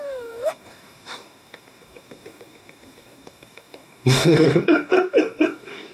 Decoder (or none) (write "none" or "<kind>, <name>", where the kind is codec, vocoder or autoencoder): codec, DAC